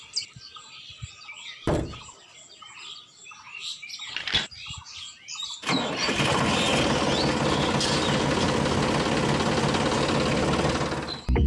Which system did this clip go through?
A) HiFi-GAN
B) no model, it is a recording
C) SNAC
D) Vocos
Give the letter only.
B